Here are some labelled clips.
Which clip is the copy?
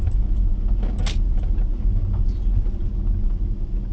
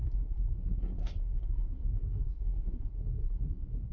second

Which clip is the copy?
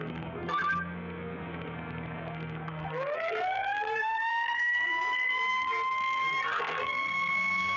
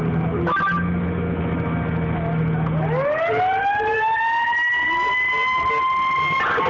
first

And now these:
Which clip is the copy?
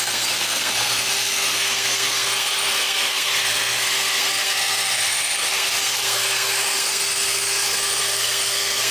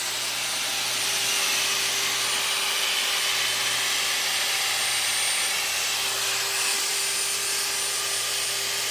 first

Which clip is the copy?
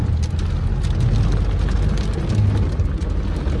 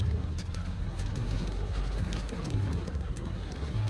second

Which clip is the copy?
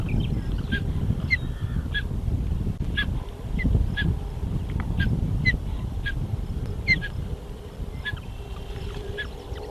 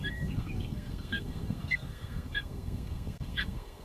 second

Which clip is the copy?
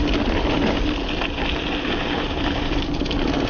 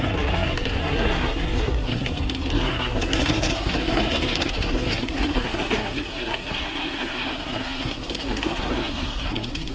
second